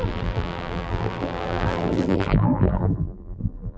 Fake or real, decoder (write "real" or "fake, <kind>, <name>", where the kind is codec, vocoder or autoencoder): fake, vocoder, BigVGAN v2